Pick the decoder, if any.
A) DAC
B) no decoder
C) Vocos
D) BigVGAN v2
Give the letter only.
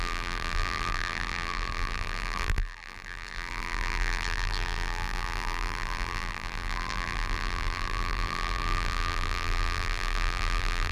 D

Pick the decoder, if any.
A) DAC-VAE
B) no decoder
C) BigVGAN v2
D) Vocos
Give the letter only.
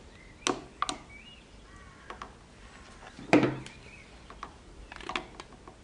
B